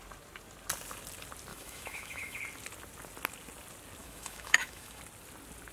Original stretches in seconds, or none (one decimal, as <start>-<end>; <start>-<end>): 0.0-1.5; 2.4-4.0; 5.0-5.7